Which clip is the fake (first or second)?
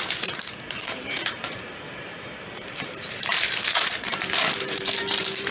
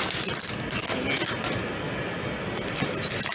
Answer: first